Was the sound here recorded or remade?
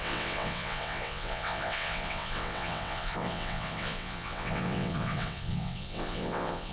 remade